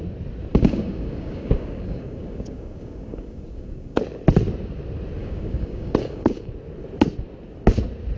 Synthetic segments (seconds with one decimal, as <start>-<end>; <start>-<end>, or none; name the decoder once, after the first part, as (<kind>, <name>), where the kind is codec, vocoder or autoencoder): 0.5-4.0 (codec, DAC); 5.2-6.5